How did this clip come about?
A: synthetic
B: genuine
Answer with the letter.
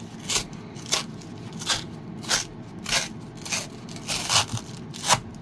B